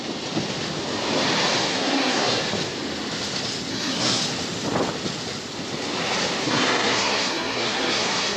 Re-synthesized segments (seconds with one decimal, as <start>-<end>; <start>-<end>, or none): 1.7-2.4; 3.7-4.2; 6.4-8.4